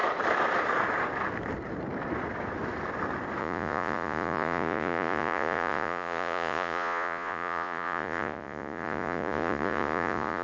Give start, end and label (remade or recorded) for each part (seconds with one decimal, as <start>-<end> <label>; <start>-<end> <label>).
0.0-3.4 recorded; 3.4-10.4 remade